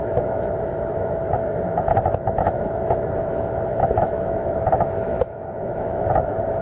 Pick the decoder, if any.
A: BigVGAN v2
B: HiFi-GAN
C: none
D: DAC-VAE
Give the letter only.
D